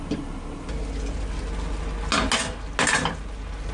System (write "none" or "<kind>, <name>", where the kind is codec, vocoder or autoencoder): none